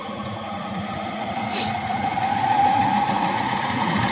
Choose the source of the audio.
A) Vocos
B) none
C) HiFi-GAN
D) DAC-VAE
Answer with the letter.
A